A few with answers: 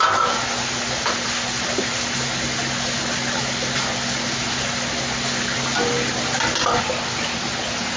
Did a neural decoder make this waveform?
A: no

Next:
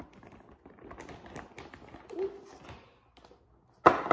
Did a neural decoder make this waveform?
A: no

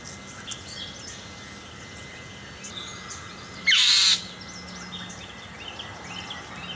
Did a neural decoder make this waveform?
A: no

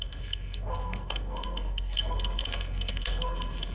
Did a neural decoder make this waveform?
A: yes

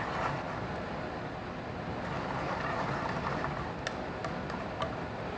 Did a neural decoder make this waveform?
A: no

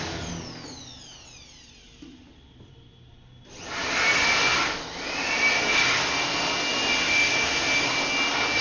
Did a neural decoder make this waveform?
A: no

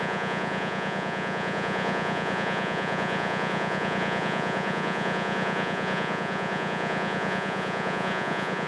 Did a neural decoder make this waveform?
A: yes